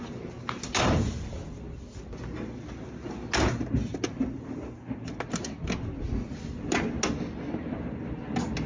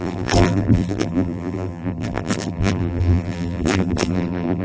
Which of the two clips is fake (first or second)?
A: second